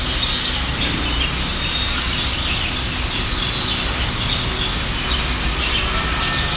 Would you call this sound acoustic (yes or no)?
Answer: yes